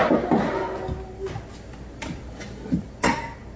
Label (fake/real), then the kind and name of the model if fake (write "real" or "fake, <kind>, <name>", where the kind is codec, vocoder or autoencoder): real